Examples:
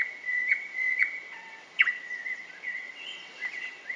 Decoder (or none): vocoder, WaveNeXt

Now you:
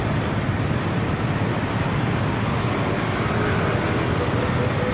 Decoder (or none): none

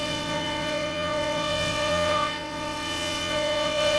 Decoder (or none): vocoder, WaveNeXt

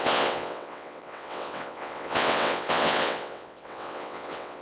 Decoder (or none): vocoder, WaveNeXt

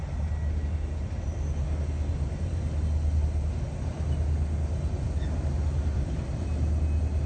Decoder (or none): none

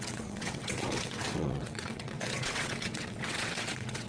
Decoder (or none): vocoder, WaveNeXt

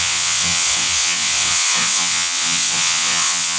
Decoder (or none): vocoder, WaveNeXt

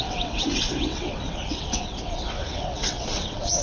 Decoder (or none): vocoder, WaveNeXt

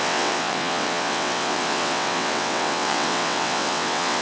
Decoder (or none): vocoder, WaveNeXt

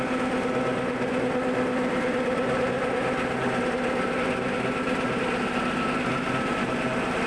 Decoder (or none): none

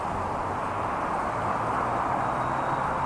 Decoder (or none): none